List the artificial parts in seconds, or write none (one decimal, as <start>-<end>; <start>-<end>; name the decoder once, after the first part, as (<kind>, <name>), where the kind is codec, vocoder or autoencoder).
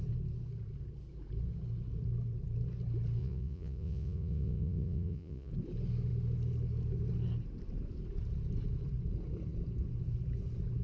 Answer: 3.2-5.5 (vocoder, Vocos)